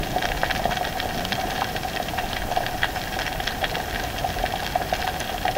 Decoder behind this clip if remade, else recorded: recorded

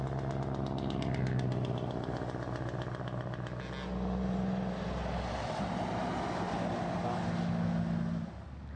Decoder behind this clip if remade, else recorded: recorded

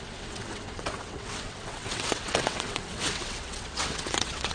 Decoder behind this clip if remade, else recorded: remade, vocoder, WaveNeXt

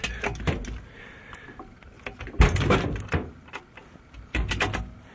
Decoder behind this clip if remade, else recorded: recorded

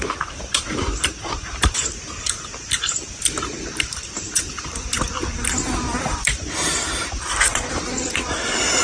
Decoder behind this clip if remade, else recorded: remade, vocoder, BigVGAN v2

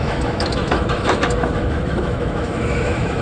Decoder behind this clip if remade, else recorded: remade, autoencoder, DAC-VAE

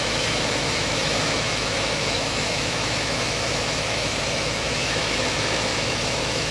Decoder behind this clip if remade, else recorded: remade, autoencoder, DAC-VAE